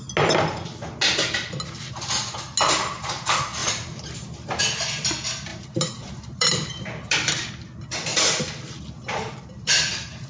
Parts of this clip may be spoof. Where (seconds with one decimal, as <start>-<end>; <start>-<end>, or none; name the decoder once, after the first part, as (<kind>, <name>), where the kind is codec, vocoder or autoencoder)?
5.5-7.3 (vocoder, BigVGAN v2); 8.1-9.9